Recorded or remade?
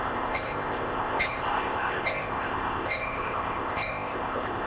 remade